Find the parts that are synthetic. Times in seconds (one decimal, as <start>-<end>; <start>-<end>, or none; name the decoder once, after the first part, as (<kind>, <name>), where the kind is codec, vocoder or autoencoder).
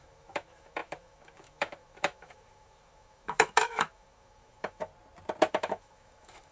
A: 0.0-4.9 (autoencoder, DAC-VAE); 5.5-6.5